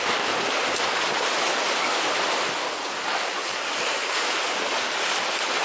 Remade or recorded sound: recorded